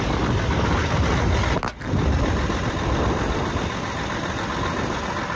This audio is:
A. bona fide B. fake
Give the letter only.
A